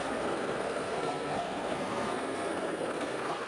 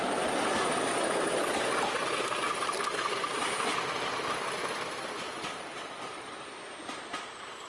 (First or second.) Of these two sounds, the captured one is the second